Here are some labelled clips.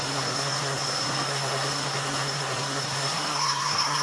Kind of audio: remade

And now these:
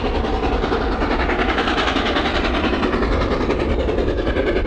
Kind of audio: recorded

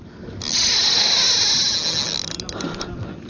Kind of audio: recorded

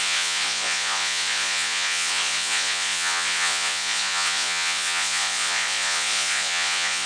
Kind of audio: remade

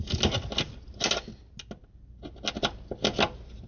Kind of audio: recorded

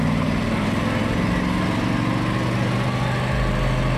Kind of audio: recorded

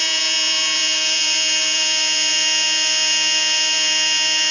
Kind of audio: remade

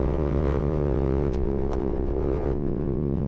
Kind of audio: remade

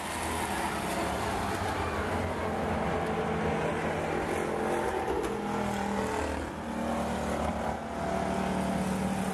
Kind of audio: recorded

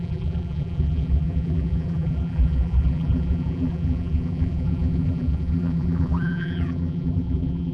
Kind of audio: remade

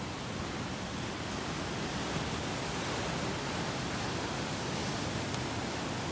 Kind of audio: recorded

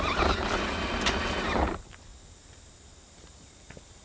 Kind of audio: remade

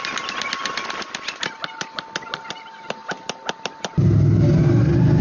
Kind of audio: recorded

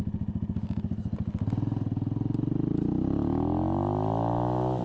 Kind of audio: recorded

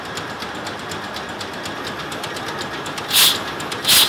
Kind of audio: recorded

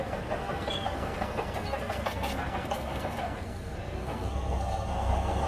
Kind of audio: remade